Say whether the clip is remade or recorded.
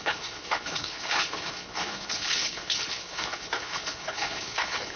remade